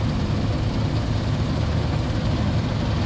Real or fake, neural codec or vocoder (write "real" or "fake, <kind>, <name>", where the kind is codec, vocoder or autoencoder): real